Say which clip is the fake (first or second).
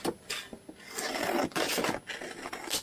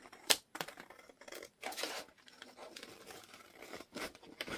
second